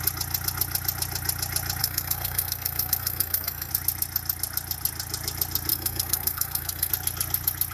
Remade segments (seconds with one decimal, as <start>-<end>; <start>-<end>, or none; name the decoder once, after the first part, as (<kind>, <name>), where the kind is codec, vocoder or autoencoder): 1.8-3.7 (codec, SNAC); 5.7-6.9